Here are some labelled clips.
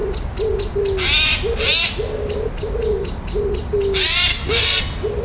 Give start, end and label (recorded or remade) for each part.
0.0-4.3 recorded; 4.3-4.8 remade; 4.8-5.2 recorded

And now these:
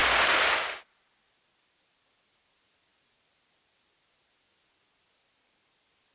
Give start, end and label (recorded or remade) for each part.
0.0-6.1 recorded

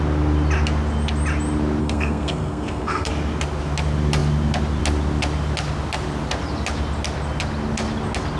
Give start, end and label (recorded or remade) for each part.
0.0-1.8 recorded; 1.8-3.1 remade; 3.1-8.4 recorded

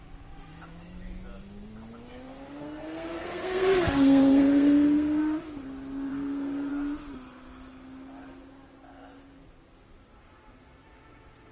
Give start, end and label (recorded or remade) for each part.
0.0-2.6 recorded; 2.6-5.2 remade; 5.2-6.1 recorded; 6.1-6.7 remade; 6.7-11.5 recorded

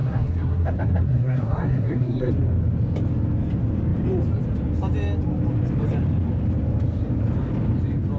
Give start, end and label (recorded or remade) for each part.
0.0-2.3 remade; 2.3-8.2 recorded

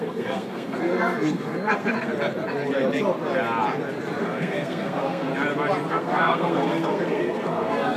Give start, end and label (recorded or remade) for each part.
0.0-2.1 remade; 2.1-4.2 recorded; 4.2-5.3 remade; 5.3-5.9 recorded; 5.9-8.0 remade